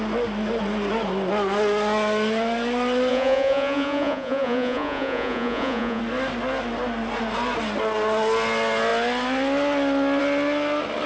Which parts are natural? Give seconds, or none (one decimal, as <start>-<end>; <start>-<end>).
0.0-3.1; 6.0-11.1